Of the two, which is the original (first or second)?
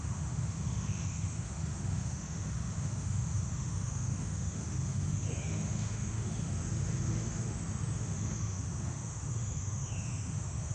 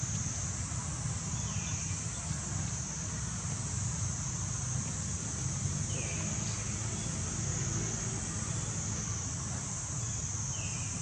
second